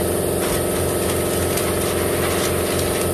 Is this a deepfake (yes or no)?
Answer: no